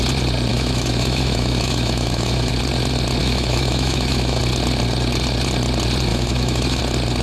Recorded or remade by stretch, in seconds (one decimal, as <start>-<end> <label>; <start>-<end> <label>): 0.0-0.5 recorded; 0.5-2.5 remade; 2.5-3.2 recorded; 3.2-4.4 remade; 4.4-6.1 recorded; 6.1-6.8 remade; 6.8-7.2 recorded